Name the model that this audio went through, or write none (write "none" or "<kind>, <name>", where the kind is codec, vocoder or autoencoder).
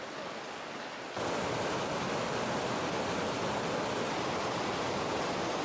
none